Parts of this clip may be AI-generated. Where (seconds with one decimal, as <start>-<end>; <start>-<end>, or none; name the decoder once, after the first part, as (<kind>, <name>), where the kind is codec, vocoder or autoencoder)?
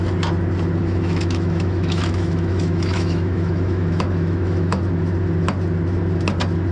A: 0.8-4.8 (autoencoder, DAC-VAE)